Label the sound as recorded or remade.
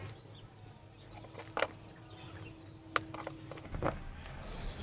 recorded